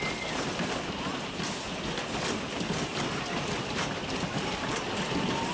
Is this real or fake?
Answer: fake